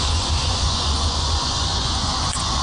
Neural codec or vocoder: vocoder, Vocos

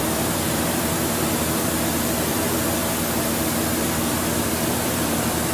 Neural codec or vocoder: vocoder, BigVGAN v2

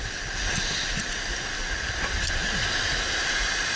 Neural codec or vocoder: none